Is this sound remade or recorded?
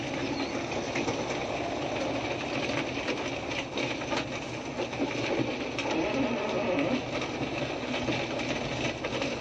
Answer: recorded